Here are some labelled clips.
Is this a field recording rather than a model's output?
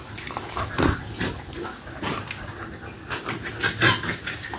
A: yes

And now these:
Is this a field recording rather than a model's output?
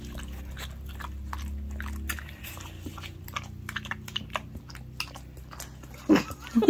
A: yes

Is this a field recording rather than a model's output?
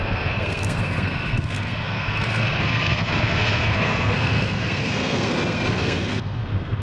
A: no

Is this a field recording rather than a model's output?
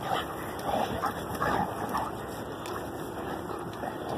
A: yes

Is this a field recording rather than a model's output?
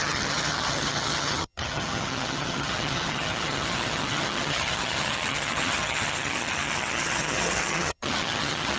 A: no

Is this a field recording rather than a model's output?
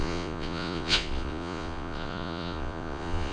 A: no